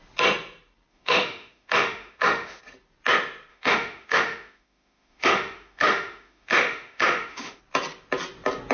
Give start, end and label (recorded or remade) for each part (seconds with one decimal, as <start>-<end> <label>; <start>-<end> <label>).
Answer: 0.0-0.9 recorded; 0.9-2.6 remade; 2.6-3.5 recorded; 3.5-7.6 remade; 7.6-8.7 recorded